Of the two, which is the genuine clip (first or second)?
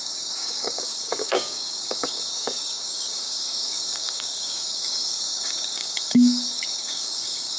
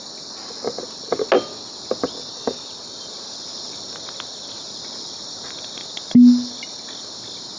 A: second